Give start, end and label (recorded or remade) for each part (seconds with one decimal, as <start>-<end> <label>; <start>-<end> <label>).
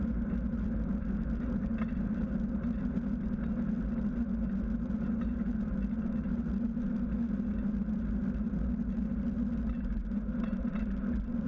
0.0-11.5 recorded